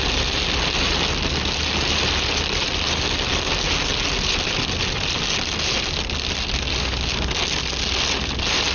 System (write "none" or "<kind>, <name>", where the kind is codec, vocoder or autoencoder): none